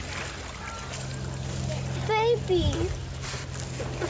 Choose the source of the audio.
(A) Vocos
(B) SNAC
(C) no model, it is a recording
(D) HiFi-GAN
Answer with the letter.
C